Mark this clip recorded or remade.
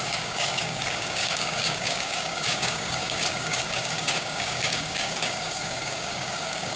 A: remade